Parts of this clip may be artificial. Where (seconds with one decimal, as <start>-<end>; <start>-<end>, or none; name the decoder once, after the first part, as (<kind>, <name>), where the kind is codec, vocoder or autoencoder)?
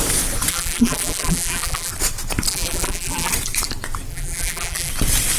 0.5-1.9 (vocoder, BigVGAN v2); 2.5-3.3; 4.1-4.9